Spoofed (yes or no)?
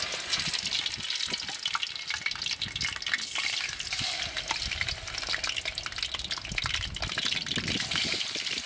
no